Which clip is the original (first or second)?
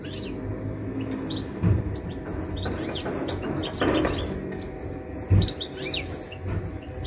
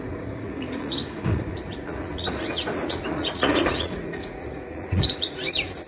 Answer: first